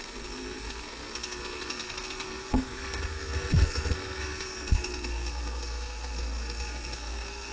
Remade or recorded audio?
remade